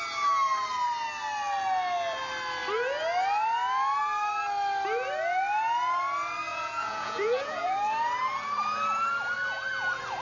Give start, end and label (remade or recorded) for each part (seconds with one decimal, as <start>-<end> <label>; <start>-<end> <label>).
0.0-6.5 recorded; 6.5-7.7 remade; 7.7-10.2 recorded